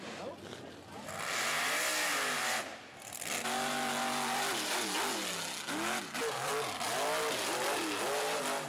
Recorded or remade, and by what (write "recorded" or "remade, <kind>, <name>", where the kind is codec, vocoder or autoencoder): recorded